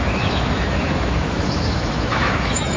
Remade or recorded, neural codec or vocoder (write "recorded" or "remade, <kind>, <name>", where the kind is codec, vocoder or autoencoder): remade, autoencoder, DAC-VAE